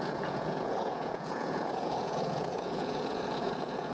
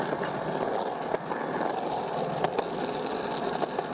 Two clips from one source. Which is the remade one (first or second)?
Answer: first